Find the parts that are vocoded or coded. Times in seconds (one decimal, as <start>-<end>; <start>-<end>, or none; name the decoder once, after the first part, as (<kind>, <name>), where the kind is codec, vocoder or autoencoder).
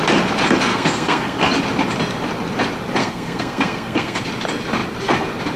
0.7-1.4 (codec, SNAC); 3.0-4.2